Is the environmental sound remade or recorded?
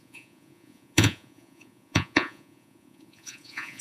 remade